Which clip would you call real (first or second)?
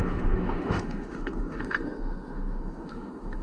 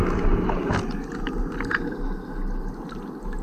second